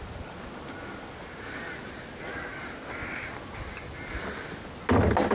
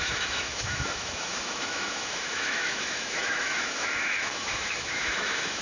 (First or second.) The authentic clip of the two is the first